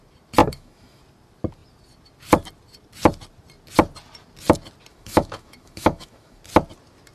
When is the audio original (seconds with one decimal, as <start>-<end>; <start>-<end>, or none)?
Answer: 0.0-0.4; 1.0-4.9; 6.4-7.1